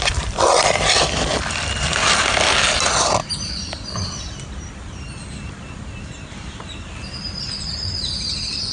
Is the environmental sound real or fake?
fake